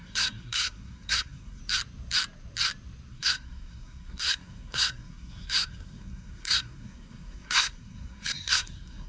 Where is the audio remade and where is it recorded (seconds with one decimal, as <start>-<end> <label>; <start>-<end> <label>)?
0.0-1.6 remade; 1.6-3.1 recorded; 3.1-9.1 remade